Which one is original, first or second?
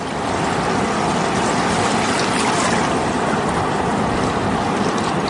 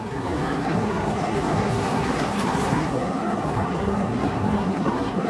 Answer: first